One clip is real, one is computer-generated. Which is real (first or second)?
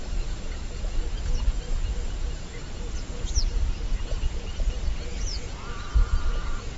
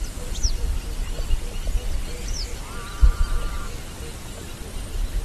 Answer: second